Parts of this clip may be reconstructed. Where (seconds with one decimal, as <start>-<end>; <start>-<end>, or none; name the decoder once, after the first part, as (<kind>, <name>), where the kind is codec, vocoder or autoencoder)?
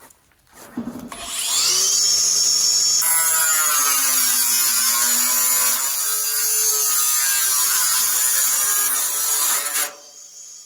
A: none